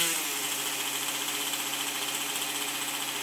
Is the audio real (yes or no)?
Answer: yes